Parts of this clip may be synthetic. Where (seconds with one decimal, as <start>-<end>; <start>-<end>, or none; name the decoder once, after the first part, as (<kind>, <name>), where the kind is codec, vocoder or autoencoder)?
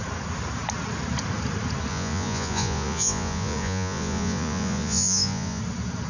1.9-5.6 (vocoder, Vocos)